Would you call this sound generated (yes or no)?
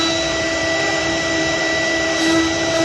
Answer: yes